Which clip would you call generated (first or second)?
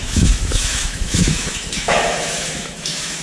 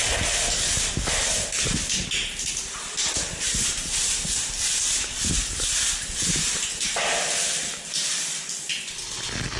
first